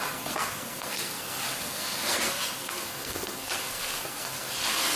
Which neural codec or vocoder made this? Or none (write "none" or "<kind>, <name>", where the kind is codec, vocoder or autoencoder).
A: codec, SNAC